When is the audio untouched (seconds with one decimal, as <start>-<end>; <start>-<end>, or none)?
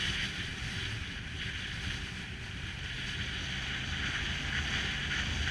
0.0-5.5